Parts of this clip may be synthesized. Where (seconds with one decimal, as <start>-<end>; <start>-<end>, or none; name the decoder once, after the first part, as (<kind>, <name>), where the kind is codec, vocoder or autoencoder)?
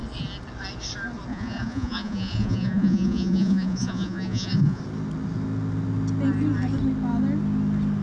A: 1.3-4.8 (vocoder, Vocos)